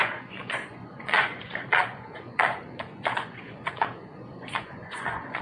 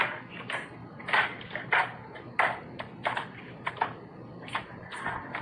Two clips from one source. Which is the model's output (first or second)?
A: first